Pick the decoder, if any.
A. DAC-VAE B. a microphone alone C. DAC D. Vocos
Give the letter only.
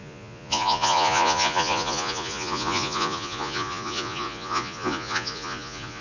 D